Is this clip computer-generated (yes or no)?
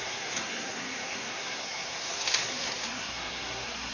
yes